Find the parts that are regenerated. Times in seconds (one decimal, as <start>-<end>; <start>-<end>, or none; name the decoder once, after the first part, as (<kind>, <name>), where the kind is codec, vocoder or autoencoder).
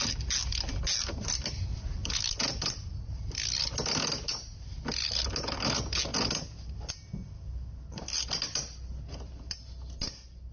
none